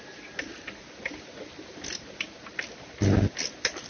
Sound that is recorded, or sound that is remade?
recorded